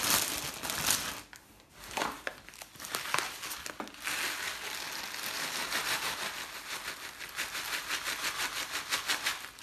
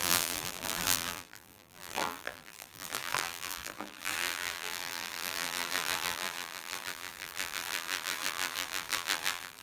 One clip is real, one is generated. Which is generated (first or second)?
second